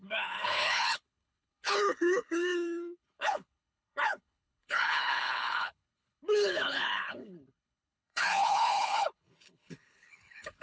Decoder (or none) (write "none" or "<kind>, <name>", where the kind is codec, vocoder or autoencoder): codec, HILCodec